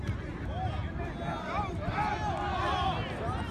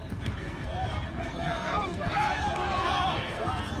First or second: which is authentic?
first